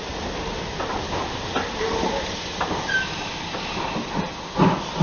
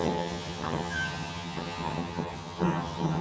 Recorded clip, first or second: first